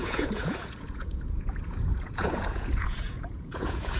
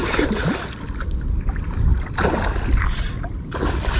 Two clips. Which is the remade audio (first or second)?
first